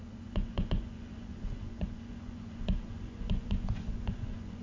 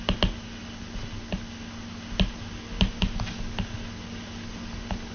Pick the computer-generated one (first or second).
first